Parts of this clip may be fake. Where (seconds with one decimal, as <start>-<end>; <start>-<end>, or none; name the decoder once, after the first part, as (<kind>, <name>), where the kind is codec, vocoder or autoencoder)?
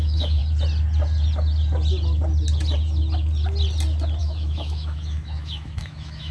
0.0-0.4 (autoencoder, DAC-VAE); 4.2-6.3